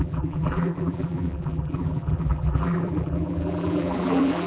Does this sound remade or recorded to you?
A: remade